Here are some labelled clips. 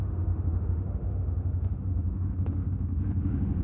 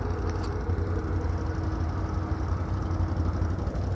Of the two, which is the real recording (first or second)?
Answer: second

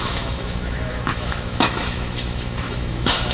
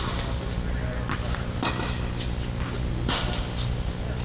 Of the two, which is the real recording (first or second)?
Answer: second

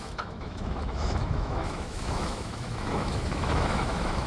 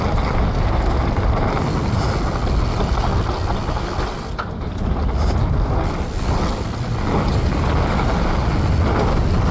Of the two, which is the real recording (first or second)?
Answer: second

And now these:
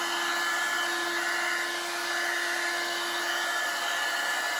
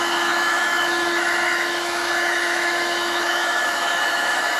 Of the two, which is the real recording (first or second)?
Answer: first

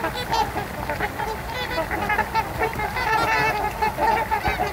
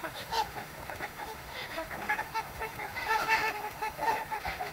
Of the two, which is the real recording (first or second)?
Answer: first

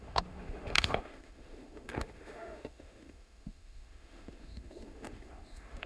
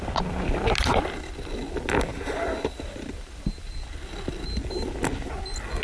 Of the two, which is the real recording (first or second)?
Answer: second